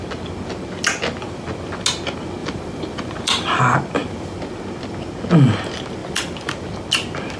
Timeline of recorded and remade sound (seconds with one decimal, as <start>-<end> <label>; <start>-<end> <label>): 0.0-2.4 recorded; 2.4-3.6 remade; 3.6-6.0 recorded; 6.0-6.7 remade; 6.7-7.4 recorded